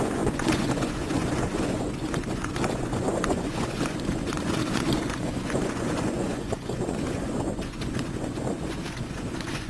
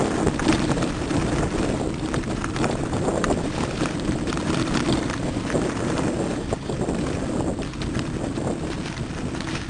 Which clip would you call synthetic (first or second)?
first